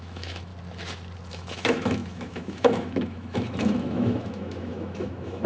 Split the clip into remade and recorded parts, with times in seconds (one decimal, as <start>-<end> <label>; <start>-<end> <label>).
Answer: 0.0-0.5 remade; 0.5-1.3 recorded; 1.3-5.5 remade